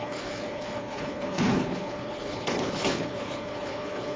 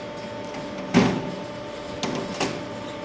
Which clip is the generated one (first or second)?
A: first